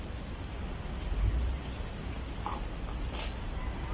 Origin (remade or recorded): recorded